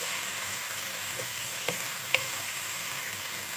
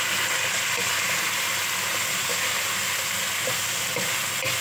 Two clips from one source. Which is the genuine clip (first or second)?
second